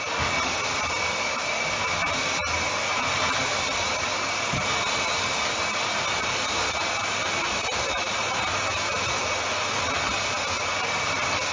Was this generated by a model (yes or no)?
no